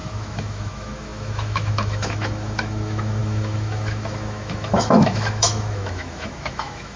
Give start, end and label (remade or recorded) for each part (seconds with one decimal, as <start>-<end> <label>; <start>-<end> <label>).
0.0-7.0 remade